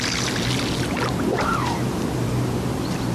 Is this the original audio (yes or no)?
yes